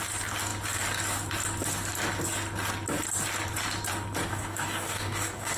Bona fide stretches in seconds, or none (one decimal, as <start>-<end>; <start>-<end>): 0.0-4.3

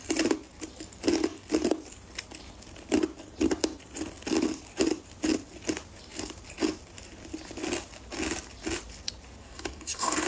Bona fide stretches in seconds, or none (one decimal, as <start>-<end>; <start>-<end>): 0.0-9.4

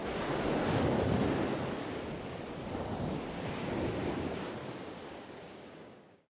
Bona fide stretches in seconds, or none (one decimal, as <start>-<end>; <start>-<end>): 0.0-4.6

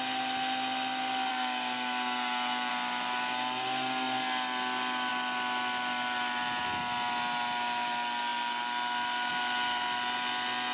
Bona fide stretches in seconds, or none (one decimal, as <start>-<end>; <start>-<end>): 0.0-1.3; 2.7-10.7

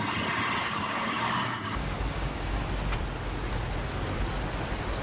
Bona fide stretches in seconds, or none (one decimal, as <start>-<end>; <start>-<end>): 0.0-0.6; 2.6-5.0

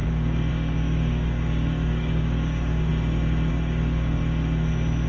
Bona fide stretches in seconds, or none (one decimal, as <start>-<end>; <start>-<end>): 2.9-3.5; 4.2-5.1

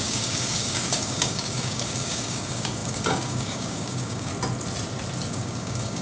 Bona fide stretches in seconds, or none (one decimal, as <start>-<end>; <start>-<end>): 4.3-5.3

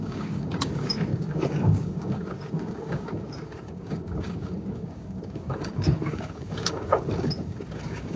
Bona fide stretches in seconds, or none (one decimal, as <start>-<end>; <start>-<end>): none